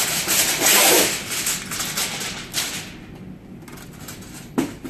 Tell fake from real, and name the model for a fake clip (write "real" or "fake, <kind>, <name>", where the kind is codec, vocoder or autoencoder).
real